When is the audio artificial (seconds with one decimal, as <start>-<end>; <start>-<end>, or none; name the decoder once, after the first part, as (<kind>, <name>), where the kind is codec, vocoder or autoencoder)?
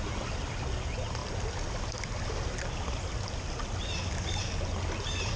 none